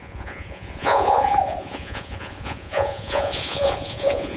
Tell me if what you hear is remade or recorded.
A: remade